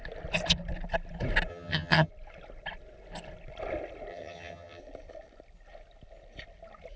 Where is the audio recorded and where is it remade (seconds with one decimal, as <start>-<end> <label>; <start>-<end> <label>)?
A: 0.0-1.5 recorded; 1.5-2.1 remade; 2.1-4.1 recorded; 4.1-4.8 remade; 4.8-7.0 recorded